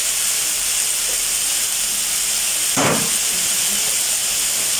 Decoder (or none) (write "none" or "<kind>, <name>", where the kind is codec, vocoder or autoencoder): none